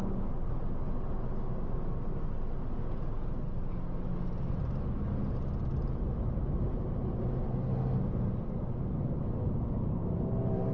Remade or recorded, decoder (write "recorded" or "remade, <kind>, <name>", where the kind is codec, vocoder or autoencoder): recorded